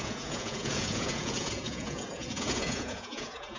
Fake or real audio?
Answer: fake